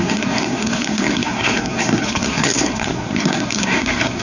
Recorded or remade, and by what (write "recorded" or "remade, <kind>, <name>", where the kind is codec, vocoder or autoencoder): remade, codec, SNAC